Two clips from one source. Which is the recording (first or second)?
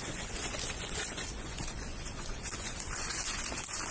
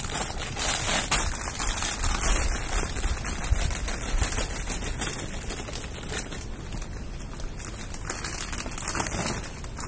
second